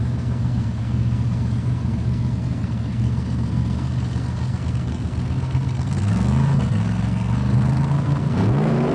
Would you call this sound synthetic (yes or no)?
yes